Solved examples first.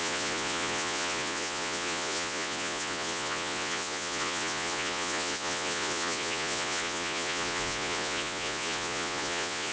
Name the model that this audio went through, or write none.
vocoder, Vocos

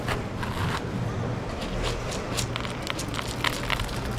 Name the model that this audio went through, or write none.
none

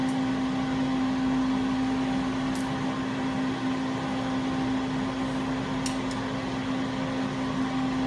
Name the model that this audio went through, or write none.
none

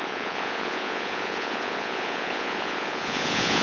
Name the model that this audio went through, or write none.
vocoder, Vocos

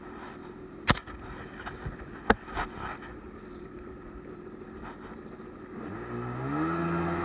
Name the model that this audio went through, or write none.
none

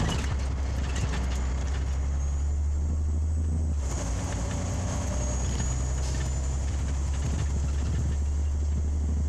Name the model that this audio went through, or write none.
none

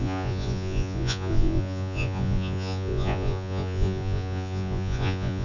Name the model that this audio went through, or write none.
vocoder, Vocos